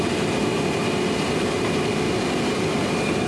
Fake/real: real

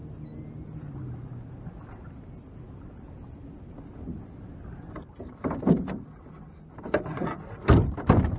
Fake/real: real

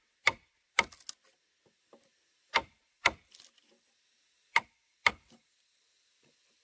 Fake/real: real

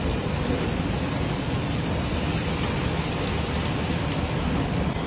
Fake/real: fake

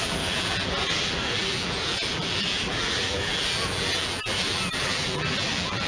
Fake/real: fake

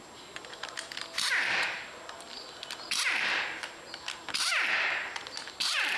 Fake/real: real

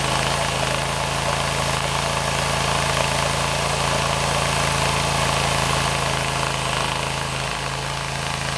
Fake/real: real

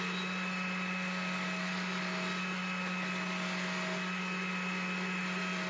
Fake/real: real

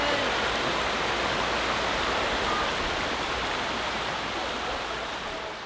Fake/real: fake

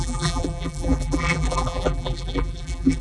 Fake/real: fake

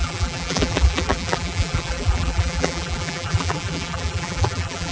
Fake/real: fake